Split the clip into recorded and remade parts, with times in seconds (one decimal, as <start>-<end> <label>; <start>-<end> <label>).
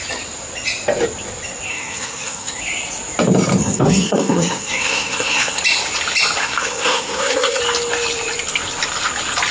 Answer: 0.0-1.7 recorded; 1.7-2.6 remade; 2.6-3.6 recorded; 3.6-5.6 remade; 5.6-6.4 recorded; 6.4-7.6 remade; 7.6-9.5 recorded